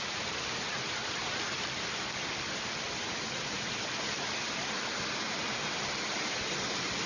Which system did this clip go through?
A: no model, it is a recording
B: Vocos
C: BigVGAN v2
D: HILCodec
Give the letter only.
A